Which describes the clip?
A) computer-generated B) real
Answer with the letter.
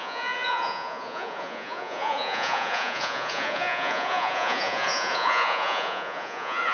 A